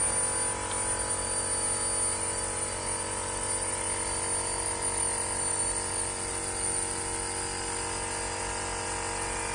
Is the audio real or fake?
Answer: real